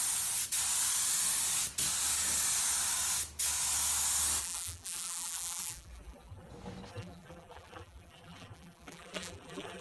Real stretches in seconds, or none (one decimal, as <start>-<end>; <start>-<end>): 0.0-4.4; 6.5-6.9